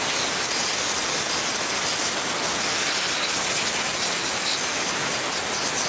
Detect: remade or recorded recorded